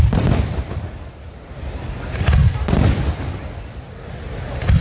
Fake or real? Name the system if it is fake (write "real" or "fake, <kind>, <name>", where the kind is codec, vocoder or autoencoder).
real